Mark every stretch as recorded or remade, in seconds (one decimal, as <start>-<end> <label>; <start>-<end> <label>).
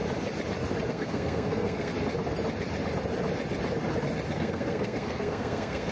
0.0-0.9 recorded; 0.9-1.9 remade; 1.9-4.3 recorded; 4.3-5.9 remade